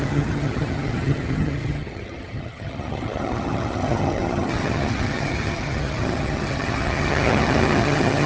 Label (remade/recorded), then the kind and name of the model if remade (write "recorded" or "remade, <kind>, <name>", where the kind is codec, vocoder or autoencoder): remade, vocoder, HiFi-GAN